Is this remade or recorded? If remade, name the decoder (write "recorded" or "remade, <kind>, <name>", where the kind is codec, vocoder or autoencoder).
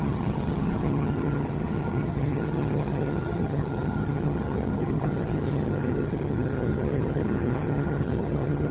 remade, vocoder, HiFi-GAN